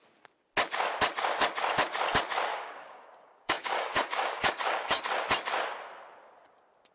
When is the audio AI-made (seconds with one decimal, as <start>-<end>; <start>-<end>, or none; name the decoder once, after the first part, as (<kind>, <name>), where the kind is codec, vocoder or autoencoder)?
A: 2.5-5.0 (codec, DAC)